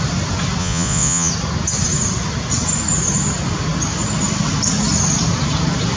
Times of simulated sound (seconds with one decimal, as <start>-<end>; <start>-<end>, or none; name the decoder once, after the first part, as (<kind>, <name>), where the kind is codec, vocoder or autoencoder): 0.6-1.3 (vocoder, Vocos)